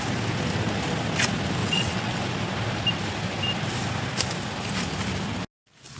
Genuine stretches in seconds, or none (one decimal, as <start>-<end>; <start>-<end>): 0.0-1.6; 2.2-6.0